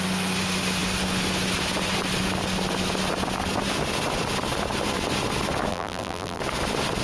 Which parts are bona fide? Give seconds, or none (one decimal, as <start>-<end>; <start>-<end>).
0.0-5.7; 6.4-7.0